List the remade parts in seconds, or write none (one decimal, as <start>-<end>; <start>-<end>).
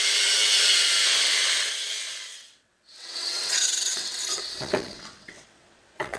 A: 2.3-6.2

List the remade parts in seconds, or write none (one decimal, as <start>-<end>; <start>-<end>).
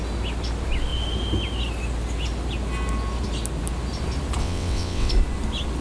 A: 4.4-5.1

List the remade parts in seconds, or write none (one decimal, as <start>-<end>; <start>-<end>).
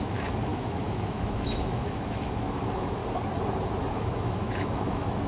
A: 0.0-3.0; 3.9-5.3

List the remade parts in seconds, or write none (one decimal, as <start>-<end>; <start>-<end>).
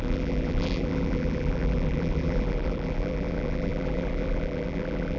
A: 0.0-5.2